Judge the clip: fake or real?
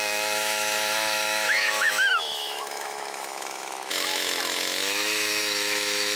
fake